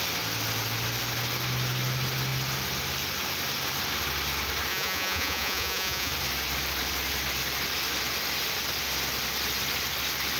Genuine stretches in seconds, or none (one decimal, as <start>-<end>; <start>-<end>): 0.0-4.7; 6.1-10.4